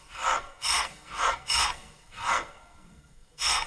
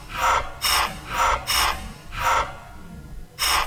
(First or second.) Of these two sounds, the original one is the second